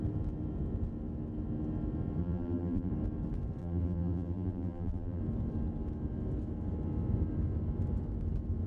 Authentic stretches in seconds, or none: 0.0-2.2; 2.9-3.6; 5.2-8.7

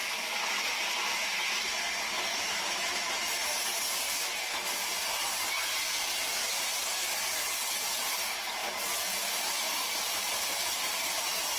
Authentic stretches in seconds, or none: 0.0-2.4; 3.3-8.0; 8.6-9.4

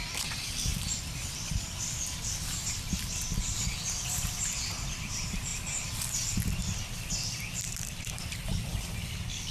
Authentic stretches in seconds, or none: none

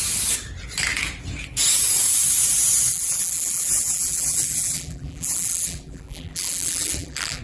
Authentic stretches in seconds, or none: 0.0-2.9

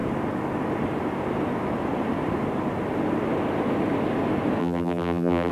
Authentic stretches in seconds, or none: 0.0-4.6

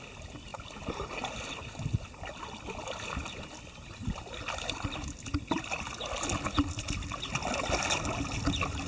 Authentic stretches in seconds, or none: 0.0-8.9